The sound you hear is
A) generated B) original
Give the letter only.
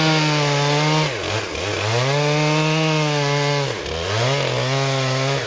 B